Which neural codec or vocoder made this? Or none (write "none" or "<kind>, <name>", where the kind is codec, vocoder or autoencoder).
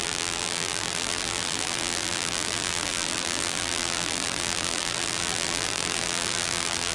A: vocoder, BigVGAN v2